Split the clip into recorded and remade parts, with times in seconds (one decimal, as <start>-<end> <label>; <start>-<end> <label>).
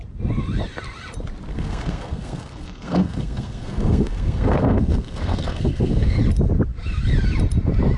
0.0-1.5 recorded; 1.5-6.2 remade; 6.2-8.0 recorded